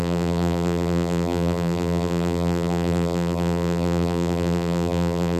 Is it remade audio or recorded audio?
remade